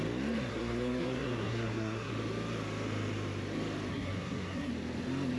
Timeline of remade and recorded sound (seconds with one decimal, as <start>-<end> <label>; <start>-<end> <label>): 0.0-0.5 recorded; 0.5-2.1 remade; 2.1-3.9 recorded; 3.9-4.7 remade; 4.7-5.4 recorded